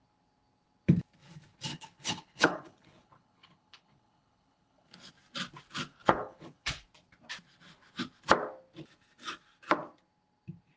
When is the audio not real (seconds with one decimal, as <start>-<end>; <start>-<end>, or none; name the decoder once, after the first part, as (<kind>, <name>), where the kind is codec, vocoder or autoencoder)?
1.7-5.1 (codec, HILCodec); 5.9-6.8